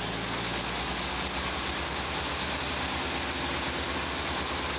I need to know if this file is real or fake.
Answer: real